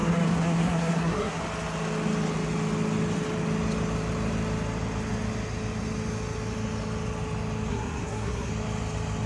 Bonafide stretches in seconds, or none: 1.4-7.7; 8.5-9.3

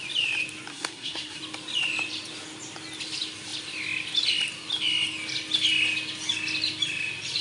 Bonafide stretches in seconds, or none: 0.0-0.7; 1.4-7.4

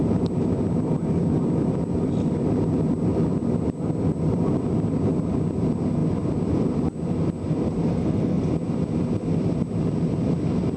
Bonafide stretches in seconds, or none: 0.0-7.9; 8.4-10.8